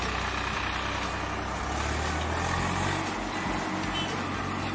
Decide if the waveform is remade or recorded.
recorded